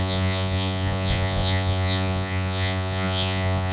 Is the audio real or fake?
fake